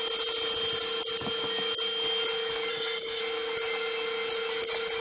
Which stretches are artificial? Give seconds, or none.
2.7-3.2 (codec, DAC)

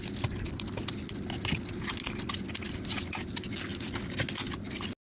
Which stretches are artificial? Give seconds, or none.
none

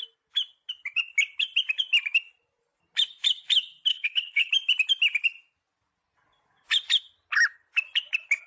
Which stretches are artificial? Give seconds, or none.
3.9-4.5 (codec, HILCodec)

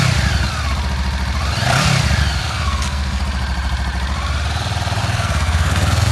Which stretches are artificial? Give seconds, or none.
2.4-3.2 (codec, SNAC); 5.0-6.1

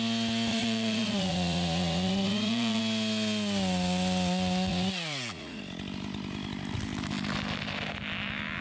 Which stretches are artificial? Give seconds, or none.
0.5-2.8 (vocoder, Vocos); 4.7-5.6